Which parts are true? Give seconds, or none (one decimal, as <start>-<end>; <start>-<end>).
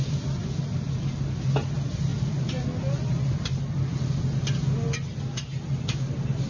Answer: 0.0-6.5